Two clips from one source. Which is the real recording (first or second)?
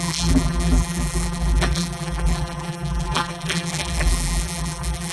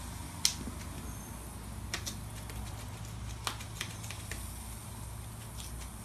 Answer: second